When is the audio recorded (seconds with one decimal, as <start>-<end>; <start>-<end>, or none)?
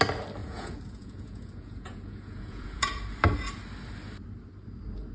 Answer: 0.0-0.4; 3.0-5.1